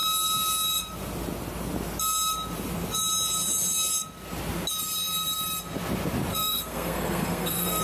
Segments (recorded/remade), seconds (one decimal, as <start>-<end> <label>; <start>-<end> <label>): 0.0-6.3 recorded; 6.3-7.8 remade